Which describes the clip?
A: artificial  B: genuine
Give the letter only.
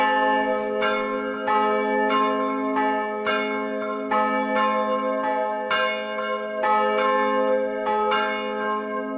B